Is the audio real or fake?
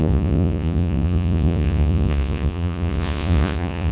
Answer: fake